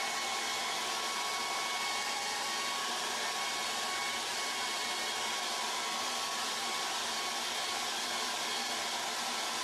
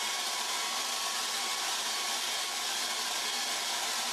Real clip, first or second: first